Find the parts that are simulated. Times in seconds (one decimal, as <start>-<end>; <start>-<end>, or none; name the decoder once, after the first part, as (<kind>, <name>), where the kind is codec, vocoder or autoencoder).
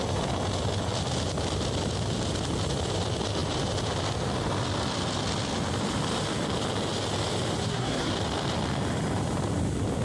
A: 7.6-8.1 (codec, SNAC)